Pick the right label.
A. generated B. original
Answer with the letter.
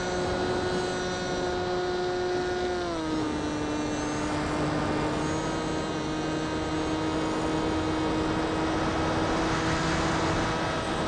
B